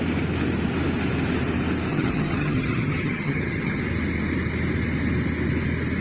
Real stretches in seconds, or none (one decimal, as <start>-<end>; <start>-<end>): 0.0-1.9; 3.8-6.0